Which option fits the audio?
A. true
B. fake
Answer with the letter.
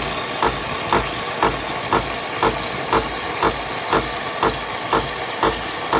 A